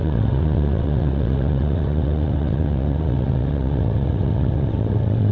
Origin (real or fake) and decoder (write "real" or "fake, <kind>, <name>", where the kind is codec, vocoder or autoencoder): fake, vocoder, WaveNeXt